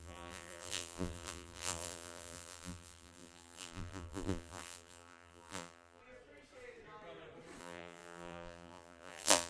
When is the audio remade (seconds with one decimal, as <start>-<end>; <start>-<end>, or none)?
0.0-6.0; 7.6-9.5